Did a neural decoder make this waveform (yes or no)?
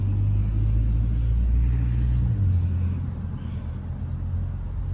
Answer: no